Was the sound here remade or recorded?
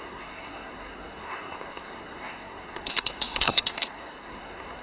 remade